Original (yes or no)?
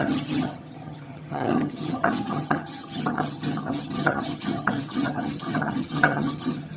no